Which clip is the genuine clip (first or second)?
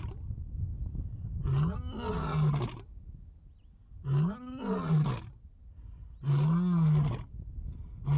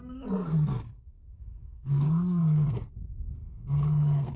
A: first